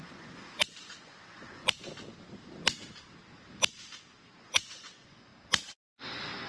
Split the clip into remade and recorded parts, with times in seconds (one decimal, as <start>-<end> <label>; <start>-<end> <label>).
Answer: 0.0-1.6 remade; 1.6-4.4 recorded; 4.4-5.3 remade; 5.3-6.5 recorded

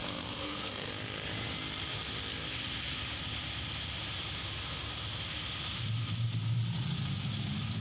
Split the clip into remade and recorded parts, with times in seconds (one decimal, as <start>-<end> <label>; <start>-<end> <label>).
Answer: 0.0-0.9 remade; 0.9-7.8 recorded

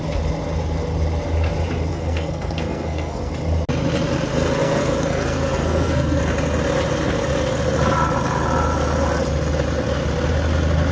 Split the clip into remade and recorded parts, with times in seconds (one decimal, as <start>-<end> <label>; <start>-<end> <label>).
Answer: 0.0-1.9 recorded; 1.9-3.3 remade; 3.3-4.6 recorded; 4.6-6.2 remade; 6.2-10.9 recorded

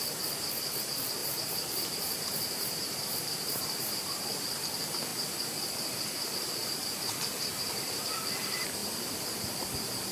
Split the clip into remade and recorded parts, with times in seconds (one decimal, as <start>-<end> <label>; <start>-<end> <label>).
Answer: 0.0-1.2 recorded; 1.2-4.1 remade; 4.1-6.6 recorded; 6.6-8.0 remade; 8.0-10.1 recorded

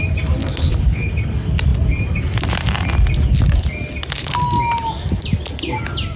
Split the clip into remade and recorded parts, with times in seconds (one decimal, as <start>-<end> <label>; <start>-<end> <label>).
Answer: 0.0-0.4 recorded; 0.4-1.1 remade; 1.1-6.2 recorded

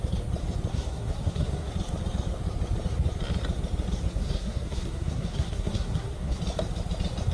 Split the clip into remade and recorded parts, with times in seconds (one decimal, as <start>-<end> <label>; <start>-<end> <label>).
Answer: 0.0-0.7 recorded; 0.7-1.7 remade; 1.7-4.1 recorded; 4.1-6.4 remade; 6.4-7.3 recorded

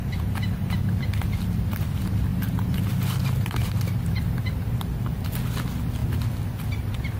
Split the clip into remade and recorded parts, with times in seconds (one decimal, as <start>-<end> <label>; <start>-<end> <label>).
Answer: 0.0-2.3 recorded; 2.3-4.7 remade; 4.7-7.2 recorded

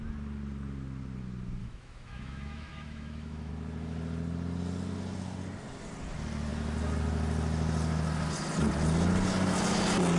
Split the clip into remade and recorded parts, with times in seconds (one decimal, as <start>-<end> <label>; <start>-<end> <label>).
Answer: 0.0-1.6 recorded; 1.6-3.5 remade; 3.5-10.2 recorded